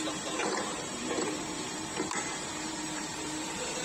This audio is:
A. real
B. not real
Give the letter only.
B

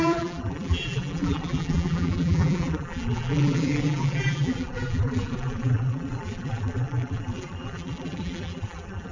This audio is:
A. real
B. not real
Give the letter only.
B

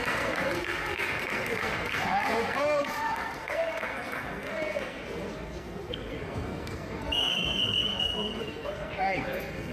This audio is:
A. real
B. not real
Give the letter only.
B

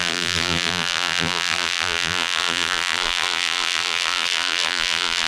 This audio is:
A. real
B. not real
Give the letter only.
B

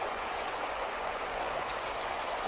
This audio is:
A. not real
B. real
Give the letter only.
A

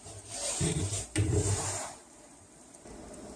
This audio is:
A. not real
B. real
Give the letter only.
A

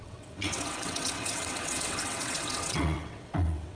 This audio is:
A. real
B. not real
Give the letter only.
B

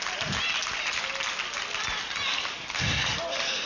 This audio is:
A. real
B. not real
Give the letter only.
A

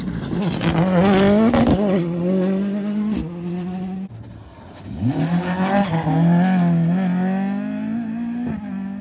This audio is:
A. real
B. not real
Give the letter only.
A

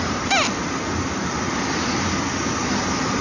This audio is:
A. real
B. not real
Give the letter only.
A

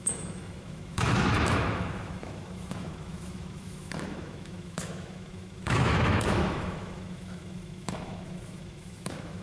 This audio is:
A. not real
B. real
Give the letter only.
A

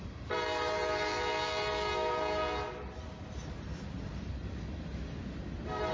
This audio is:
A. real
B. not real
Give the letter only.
A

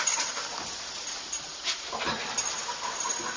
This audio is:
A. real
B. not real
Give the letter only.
A